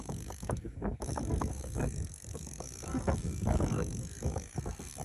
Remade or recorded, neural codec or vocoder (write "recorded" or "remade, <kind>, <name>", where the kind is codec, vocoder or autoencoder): remade, codec, SNAC